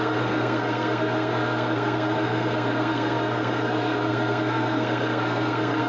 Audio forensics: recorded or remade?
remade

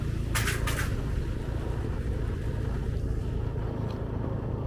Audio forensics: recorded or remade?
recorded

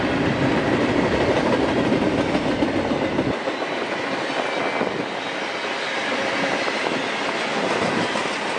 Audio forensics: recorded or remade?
recorded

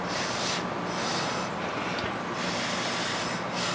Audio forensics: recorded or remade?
recorded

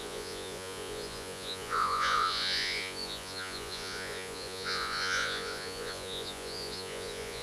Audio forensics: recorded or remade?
remade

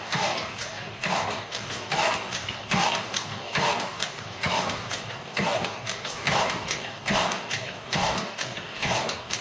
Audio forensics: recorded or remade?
remade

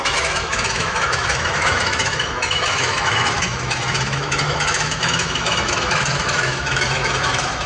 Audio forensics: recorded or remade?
remade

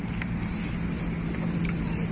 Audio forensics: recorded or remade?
recorded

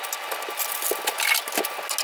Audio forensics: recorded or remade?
recorded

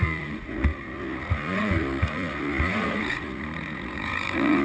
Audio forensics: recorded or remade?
remade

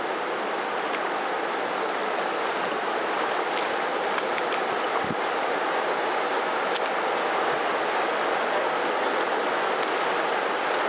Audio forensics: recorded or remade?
recorded